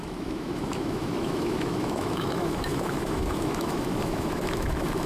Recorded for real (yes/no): no